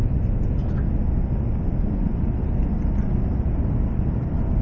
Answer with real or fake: real